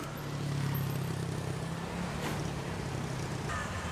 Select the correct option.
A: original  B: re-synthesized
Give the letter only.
A